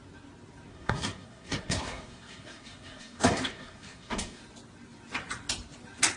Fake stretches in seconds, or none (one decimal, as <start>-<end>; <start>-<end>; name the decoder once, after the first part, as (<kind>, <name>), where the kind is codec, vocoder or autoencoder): 0.7-4.4 (codec, SNAC)